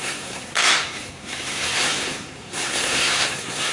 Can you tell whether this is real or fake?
fake